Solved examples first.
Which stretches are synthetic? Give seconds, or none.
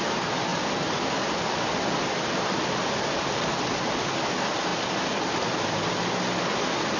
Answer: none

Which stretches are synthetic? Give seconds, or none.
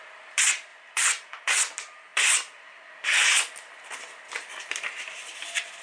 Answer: 0.0-5.8 (vocoder, BigVGAN v2)